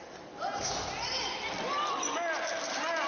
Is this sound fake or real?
real